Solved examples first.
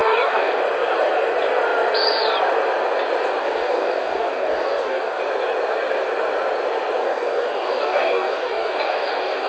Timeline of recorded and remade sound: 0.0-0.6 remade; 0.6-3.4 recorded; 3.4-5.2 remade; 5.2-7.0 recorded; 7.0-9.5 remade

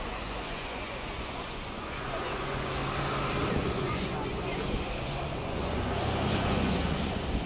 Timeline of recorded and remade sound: 0.0-2.8 remade; 2.8-3.5 recorded; 3.5-7.5 remade